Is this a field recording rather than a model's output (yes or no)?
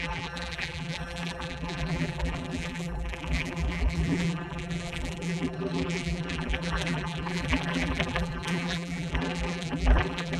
no